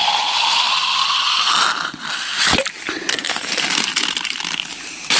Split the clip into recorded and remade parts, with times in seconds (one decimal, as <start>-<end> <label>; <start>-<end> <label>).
0.0-3.1 recorded; 3.1-3.5 remade; 3.5-5.2 recorded

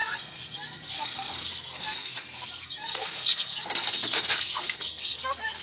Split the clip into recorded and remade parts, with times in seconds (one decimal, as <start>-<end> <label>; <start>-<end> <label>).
0.0-5.6 remade

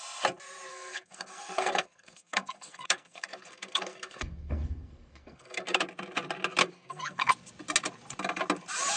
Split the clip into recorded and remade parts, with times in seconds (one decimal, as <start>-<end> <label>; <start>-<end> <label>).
0.0-0.7 recorded; 0.7-5.8 remade; 5.8-6.6 recorded; 6.6-7.3 remade; 7.3-9.0 recorded

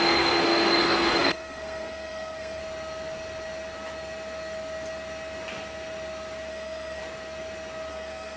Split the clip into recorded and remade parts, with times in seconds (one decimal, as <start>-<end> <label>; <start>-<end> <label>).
0.0-2.6 remade; 2.6-6.5 recorded; 6.5-7.0 remade; 7.0-7.9 recorded; 7.9-8.4 remade